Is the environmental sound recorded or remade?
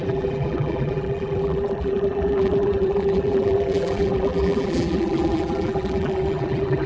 remade